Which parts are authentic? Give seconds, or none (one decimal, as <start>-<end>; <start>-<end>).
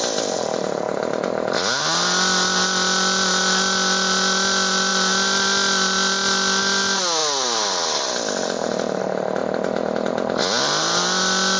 0.0-11.6